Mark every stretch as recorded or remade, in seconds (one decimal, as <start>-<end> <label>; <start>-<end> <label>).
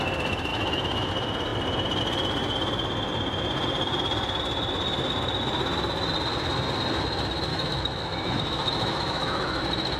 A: 0.0-0.5 recorded; 0.5-1.1 remade; 1.1-7.5 recorded; 7.5-9.6 remade; 9.6-10.0 recorded